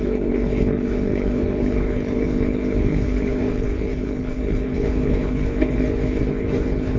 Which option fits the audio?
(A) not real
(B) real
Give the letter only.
A